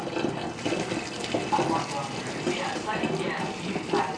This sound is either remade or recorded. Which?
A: remade